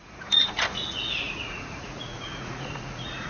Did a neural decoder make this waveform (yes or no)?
yes